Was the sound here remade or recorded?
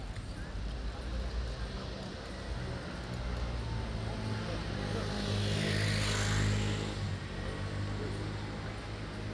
recorded